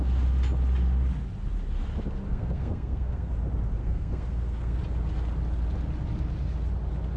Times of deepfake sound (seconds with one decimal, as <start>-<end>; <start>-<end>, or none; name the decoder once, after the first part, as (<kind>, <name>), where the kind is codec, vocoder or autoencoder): 2.3-3.3 (codec, SNAC); 3.8-4.8